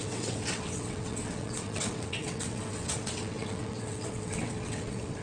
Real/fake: fake